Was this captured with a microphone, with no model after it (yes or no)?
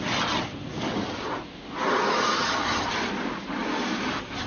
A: yes